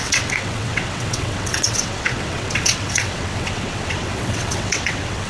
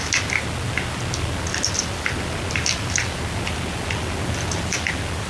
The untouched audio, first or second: second